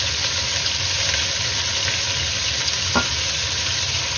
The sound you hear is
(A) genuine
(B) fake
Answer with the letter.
A